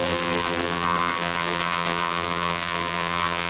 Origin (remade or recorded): remade